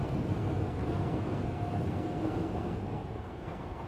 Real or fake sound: fake